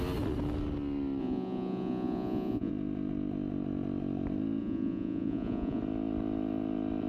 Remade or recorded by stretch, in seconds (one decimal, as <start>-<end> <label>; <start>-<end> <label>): 0.0-1.2 recorded; 1.2-2.7 remade; 2.7-4.6 recorded; 4.6-5.8 remade; 5.8-7.1 recorded